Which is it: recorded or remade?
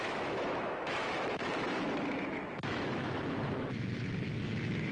remade